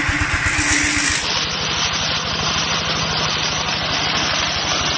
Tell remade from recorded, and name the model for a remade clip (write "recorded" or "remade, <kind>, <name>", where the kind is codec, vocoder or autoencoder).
recorded